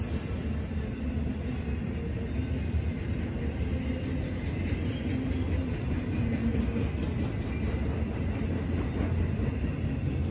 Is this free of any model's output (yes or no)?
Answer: yes